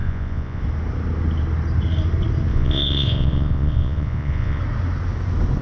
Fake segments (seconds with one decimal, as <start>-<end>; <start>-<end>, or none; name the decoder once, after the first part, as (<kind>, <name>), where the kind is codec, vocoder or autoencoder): 0.0-0.6 (vocoder, Vocos); 2.5-4.6